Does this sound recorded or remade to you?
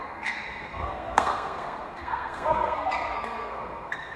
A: remade